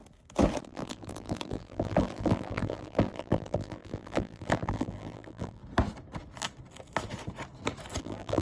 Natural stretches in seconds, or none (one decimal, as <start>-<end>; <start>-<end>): 0.0-0.6; 5.6-8.0